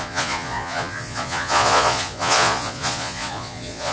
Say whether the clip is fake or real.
fake